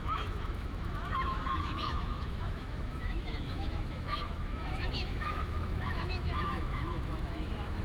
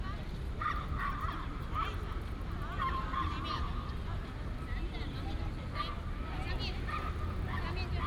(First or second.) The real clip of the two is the second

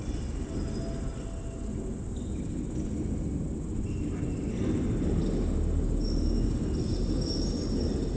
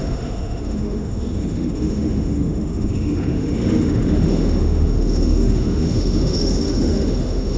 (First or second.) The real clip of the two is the first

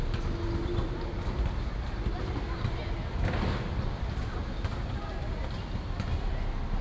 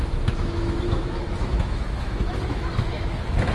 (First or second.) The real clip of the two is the first